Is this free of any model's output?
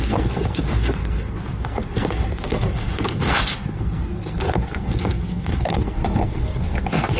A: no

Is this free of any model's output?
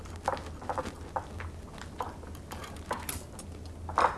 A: yes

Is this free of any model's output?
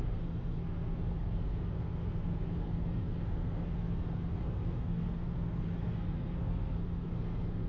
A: no